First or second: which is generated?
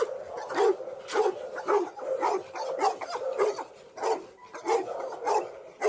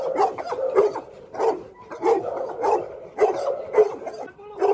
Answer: second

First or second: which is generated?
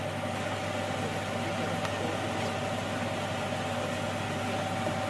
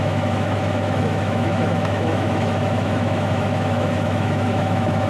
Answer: second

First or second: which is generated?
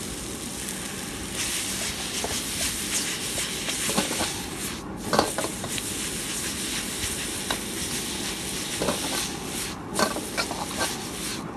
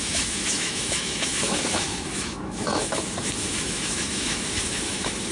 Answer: second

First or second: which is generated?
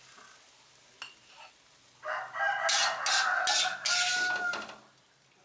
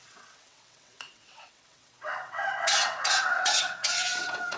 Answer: second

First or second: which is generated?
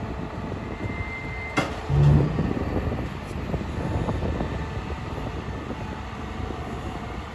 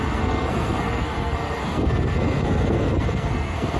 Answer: second